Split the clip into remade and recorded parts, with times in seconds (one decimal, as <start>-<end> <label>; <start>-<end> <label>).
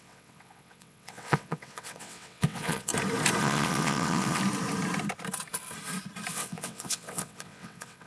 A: 0.0-2.9 remade; 2.9-3.4 recorded; 3.4-4.4 remade; 4.4-6.3 recorded; 6.3-8.1 remade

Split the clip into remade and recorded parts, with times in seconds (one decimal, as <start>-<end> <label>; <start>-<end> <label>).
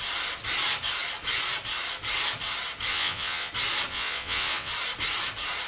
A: 0.0-2.9 recorded; 2.9-3.5 remade; 3.5-3.9 recorded; 3.9-4.7 remade; 4.7-5.7 recorded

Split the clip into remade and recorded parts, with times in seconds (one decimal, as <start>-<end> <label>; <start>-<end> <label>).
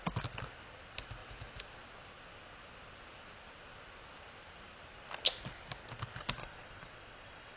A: 0.0-6.4 recorded; 6.4-7.6 remade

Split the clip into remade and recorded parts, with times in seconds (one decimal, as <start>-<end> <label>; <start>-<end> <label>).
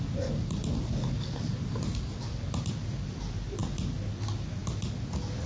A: 0.0-5.5 recorded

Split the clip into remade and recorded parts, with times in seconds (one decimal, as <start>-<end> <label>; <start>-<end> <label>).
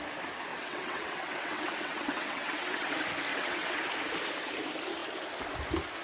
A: 0.0-0.5 recorded; 0.5-2.9 remade; 2.9-3.3 recorded; 3.3-3.8 remade; 3.8-6.0 recorded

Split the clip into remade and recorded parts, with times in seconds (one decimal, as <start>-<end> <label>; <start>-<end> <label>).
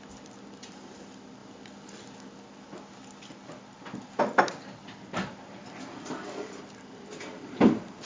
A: 0.0-8.1 recorded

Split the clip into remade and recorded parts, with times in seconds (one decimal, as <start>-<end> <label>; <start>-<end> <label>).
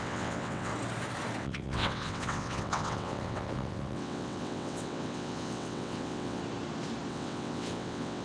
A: 0.0-0.7 remade; 0.7-1.4 recorded; 1.4-6.4 remade; 6.4-7.1 recorded; 7.1-8.2 remade